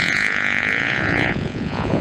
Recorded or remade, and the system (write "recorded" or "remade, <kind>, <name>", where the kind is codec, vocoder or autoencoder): remade, vocoder, Vocos